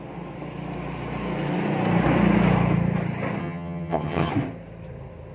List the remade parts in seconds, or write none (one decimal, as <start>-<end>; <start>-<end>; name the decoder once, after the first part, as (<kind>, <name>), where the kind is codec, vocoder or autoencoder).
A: 3.4-4.3 (vocoder, HiFi-GAN)